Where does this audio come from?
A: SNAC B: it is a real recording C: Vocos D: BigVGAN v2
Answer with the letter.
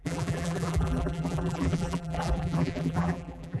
D